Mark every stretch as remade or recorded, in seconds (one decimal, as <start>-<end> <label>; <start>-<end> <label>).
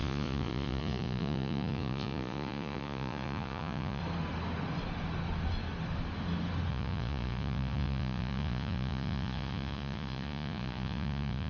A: 0.0-4.0 remade; 4.0-6.7 recorded; 6.7-11.5 remade